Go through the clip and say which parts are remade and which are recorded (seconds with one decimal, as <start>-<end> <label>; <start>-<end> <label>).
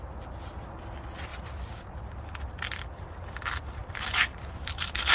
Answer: 0.0-3.8 recorded; 3.8-5.1 remade